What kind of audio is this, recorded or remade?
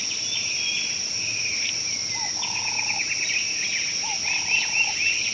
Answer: recorded